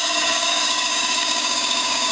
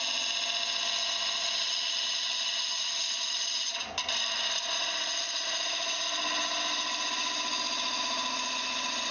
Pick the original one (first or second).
second